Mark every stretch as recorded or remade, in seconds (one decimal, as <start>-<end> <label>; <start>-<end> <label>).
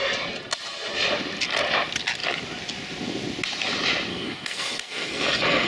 0.0-4.1 recorded; 4.1-5.7 remade